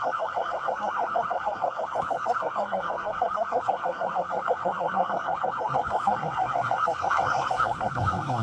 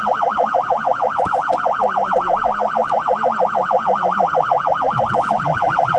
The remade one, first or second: first